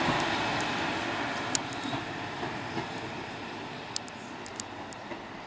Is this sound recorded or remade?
recorded